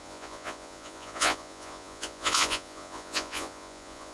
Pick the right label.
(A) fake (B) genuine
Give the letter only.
A